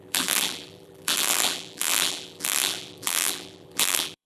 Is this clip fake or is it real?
fake